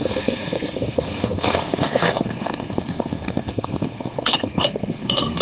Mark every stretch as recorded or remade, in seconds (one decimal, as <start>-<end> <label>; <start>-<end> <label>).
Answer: 0.0-5.4 remade